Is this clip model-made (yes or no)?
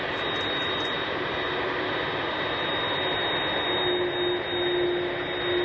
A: no